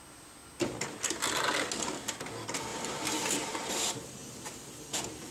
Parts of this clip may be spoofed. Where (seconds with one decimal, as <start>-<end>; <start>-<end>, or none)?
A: 2.7-3.7